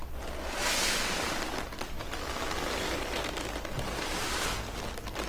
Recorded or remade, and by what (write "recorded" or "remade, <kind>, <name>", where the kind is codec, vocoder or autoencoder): recorded